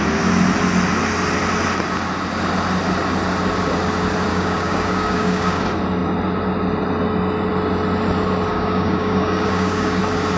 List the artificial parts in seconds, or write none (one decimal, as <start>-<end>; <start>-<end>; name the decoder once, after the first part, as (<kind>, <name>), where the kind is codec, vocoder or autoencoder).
4.3-5.6 (codec, DAC); 8.5-10.0